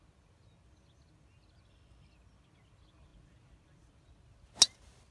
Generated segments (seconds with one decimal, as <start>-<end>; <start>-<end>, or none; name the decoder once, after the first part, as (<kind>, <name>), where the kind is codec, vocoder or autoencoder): none